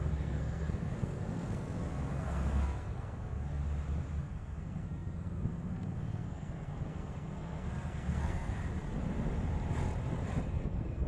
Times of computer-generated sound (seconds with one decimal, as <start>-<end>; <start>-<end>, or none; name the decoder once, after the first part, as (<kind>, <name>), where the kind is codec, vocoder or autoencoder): 0.0-3.6 (codec, SNAC); 4.2-8.6; 10.5-11.1